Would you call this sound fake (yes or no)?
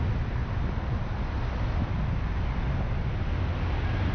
no